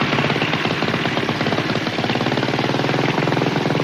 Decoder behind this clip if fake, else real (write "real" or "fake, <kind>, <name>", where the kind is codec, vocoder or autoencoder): real